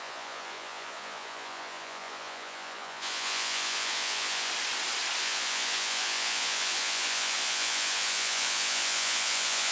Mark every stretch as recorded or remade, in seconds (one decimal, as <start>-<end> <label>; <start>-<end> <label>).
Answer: 0.0-4.5 remade; 4.5-5.2 recorded; 5.2-9.7 remade